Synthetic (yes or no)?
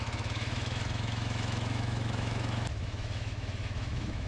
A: yes